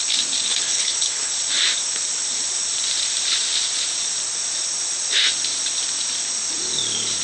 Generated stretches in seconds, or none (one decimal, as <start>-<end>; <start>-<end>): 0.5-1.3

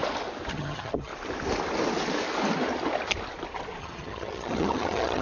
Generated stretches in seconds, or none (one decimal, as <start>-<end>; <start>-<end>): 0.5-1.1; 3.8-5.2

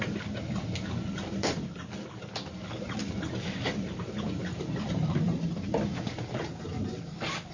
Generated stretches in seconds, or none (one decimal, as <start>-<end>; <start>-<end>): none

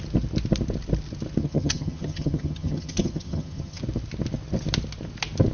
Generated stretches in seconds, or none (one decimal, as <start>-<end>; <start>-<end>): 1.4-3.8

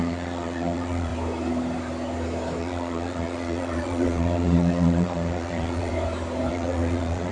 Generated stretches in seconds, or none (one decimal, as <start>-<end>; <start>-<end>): 0.0-1.1; 2.6-5.9; 6.5-7.3